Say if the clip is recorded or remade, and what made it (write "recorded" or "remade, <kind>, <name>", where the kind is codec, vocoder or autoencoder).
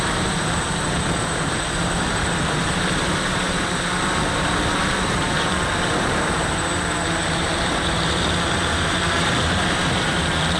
remade, vocoder, BigVGAN v2